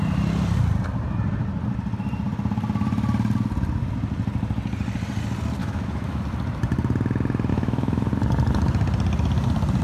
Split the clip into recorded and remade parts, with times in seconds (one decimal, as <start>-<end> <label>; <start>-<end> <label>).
0.0-5.6 recorded; 5.6-6.2 remade; 6.2-7.5 recorded; 7.5-8.1 remade; 8.1-9.8 recorded